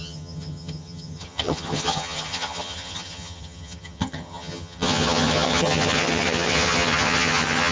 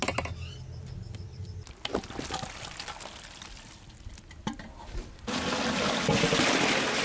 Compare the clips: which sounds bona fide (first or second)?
second